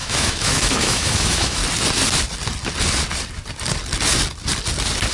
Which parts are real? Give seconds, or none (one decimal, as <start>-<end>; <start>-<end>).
1.6-5.1